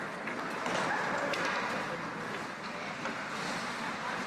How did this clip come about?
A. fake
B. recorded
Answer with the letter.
B